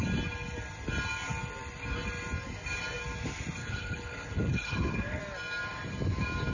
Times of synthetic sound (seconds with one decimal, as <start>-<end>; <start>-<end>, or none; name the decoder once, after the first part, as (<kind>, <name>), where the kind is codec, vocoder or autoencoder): 3.6-5.2 (codec, HILCodec)